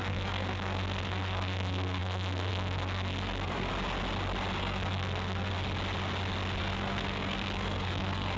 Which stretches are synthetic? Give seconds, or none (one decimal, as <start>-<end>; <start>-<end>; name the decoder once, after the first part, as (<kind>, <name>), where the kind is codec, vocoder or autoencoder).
0.0-3.7 (codec, SNAC); 4.6-5.5; 6.6-8.4